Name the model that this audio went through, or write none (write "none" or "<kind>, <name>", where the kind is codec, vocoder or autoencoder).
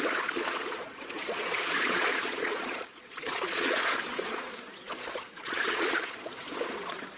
vocoder, Vocos